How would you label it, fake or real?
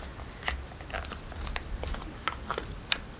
real